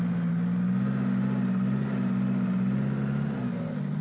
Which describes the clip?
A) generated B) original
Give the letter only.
B